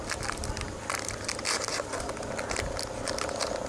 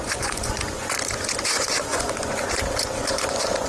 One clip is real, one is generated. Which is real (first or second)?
first